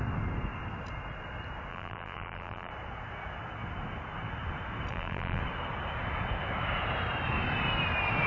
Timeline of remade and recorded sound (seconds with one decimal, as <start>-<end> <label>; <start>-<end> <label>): 0.0-1.7 recorded; 1.7-2.7 remade; 2.7-4.9 recorded; 4.9-5.4 remade; 5.4-8.3 recorded